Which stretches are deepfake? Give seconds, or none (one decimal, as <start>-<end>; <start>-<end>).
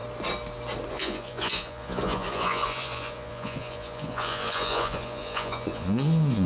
0.9-6.5